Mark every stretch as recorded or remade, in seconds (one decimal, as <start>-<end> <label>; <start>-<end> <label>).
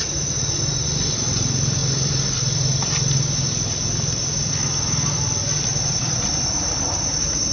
0.0-7.5 recorded